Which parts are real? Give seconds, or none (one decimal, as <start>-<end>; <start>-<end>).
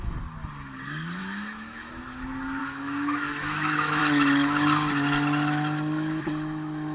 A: 0.0-1.2; 1.9-2.6; 4.0-6.9